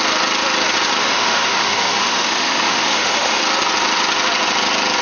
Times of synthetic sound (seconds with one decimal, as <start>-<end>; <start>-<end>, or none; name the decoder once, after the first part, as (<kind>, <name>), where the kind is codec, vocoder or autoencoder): 1.0-3.4 (autoencoder, DAC-VAE)